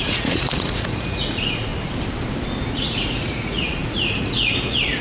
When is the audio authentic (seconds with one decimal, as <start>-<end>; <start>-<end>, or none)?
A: 1.7-2.7